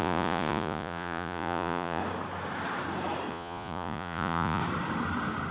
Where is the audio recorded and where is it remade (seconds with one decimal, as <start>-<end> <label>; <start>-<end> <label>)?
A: 0.0-2.0 remade; 2.0-3.3 recorded; 3.3-4.6 remade; 4.6-5.5 recorded